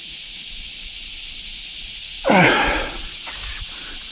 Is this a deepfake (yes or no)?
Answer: yes